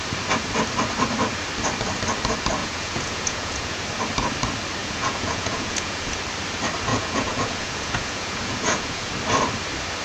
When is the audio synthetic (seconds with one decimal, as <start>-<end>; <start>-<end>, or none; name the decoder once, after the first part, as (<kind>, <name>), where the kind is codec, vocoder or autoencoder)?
2.6-3.8 (vocoder, Vocos); 4.8-6.2; 6.9-9.1

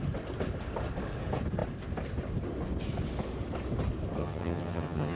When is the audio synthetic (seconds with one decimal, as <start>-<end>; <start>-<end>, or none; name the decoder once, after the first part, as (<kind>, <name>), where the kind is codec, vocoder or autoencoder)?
4.2-5.2 (vocoder, HiFi-GAN)

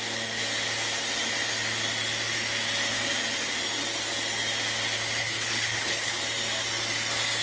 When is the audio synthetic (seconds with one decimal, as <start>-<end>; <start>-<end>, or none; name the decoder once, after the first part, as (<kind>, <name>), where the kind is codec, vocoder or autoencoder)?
5.2-6.2 (codec, HILCodec)

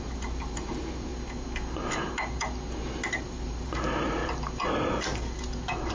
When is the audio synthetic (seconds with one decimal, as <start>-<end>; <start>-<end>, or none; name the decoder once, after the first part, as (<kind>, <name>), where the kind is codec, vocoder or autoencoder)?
0.0-1.1 (vocoder, BigVGAN v2); 3.2-4.2